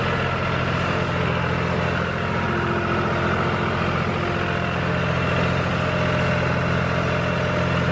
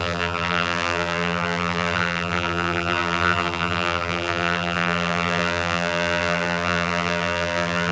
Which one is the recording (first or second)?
first